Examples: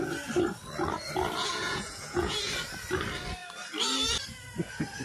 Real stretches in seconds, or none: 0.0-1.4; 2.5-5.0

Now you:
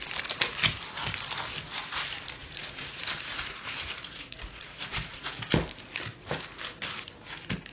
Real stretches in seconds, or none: 0.0-2.4; 5.3-7.7

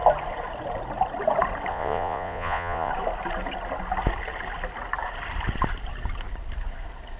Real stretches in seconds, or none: 0.0-1.7; 2.9-7.2